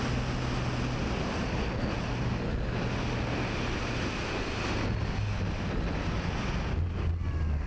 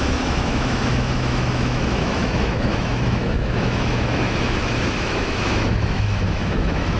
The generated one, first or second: second